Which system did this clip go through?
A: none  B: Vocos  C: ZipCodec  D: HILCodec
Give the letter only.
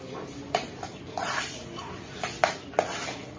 A